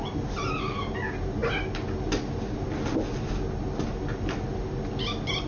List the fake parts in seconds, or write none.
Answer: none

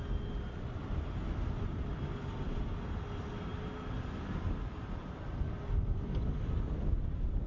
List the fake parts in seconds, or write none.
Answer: none

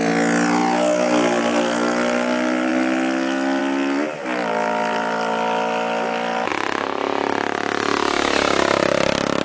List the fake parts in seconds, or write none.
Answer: none

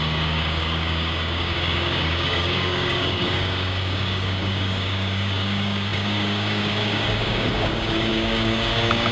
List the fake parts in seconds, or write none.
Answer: 0.0-9.1 (codec, DAC)

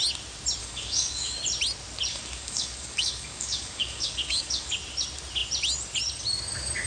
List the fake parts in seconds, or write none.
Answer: 0.6-1.4 (codec, DAC); 2.1-4.7

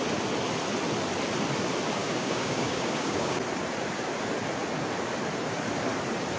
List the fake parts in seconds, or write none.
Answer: 2.0-3.4 (codec, DAC)